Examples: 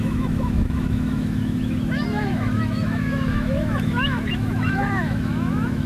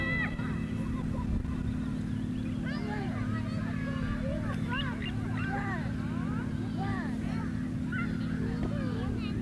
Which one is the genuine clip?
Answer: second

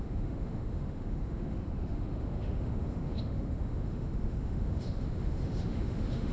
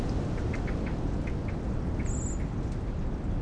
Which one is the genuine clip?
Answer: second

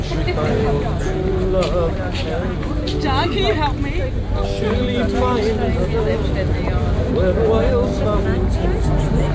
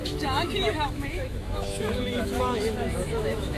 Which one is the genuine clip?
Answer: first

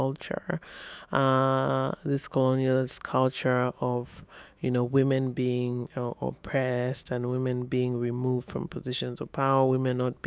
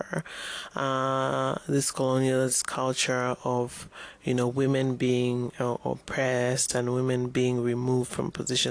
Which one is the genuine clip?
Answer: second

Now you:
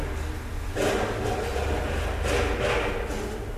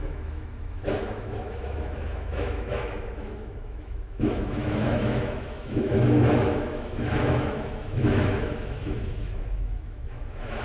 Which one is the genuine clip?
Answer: first